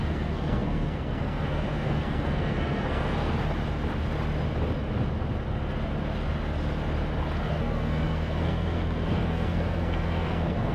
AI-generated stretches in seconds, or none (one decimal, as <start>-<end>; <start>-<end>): 0.0-3.3; 7.5-10.7